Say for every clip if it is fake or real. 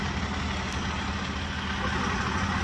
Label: real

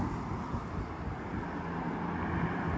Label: real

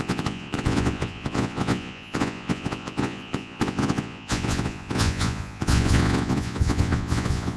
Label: fake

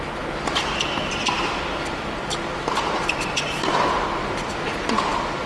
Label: real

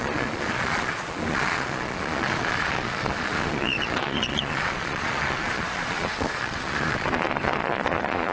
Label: fake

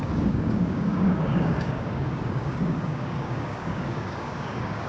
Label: fake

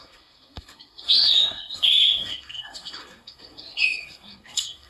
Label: fake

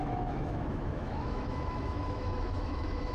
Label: fake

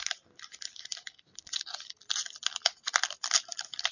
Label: real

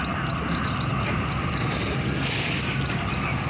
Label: real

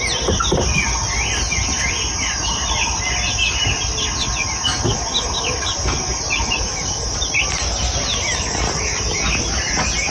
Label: real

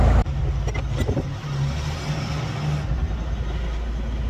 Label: real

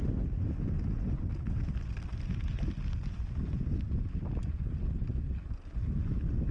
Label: real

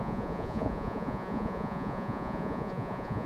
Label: fake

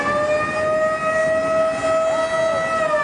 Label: real